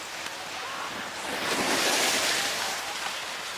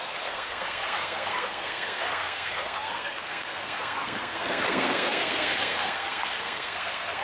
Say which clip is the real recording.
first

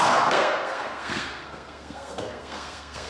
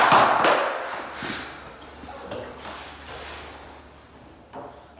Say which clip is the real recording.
second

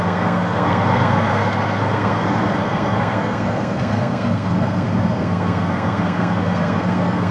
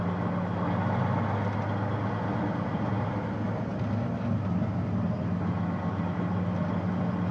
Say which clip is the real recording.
second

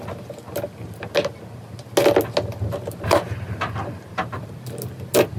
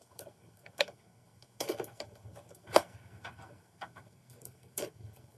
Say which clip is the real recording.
first